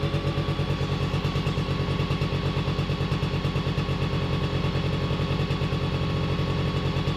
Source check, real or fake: real